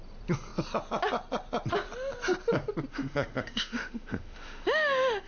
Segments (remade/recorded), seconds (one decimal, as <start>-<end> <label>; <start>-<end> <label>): 0.0-2.9 recorded; 2.9-5.3 remade